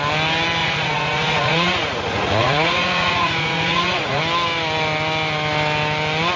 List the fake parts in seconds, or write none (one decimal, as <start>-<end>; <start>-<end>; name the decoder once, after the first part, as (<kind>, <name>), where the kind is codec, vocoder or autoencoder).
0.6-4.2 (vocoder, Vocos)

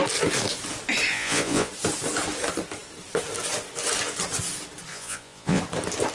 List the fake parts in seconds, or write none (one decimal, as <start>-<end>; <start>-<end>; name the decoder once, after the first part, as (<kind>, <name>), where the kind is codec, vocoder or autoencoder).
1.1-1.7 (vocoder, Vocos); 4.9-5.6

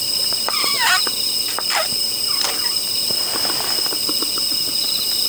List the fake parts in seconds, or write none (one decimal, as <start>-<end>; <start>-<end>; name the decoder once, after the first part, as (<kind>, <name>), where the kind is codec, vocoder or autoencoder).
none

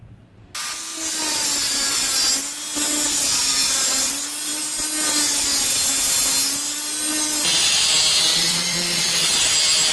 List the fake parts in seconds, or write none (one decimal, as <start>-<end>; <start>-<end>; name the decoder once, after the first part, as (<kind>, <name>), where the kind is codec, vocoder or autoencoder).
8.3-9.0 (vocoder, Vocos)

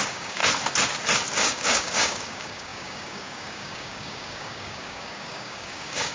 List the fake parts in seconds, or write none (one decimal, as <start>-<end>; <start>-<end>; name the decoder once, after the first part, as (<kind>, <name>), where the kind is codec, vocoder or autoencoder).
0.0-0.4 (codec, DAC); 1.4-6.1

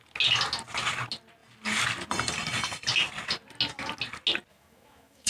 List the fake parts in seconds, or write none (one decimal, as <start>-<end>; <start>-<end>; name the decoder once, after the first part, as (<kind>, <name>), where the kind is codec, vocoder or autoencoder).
4.5-5.3 (autoencoder, DAC-VAE)